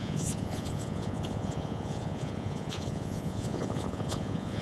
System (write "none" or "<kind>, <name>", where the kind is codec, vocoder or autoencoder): vocoder, Vocos